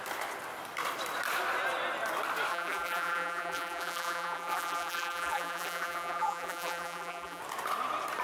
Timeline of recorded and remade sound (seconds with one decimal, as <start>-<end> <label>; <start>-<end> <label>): 0.0-2.5 recorded; 2.5-7.4 remade; 7.4-8.2 recorded